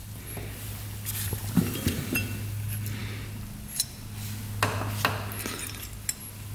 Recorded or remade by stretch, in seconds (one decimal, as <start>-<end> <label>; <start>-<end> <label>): 0.0-1.4 recorded; 1.4-2.0 remade; 2.0-6.5 recorded